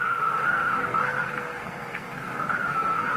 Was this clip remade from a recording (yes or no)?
yes